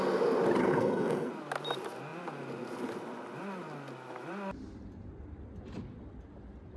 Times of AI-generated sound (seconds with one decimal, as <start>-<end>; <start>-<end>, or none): 0.6-1.3